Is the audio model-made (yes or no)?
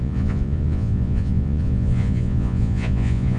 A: yes